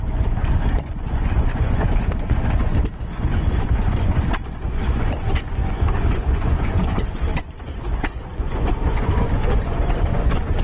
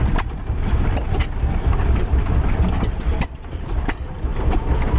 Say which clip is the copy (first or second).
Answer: first